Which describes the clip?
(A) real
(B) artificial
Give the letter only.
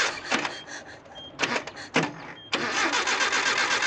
A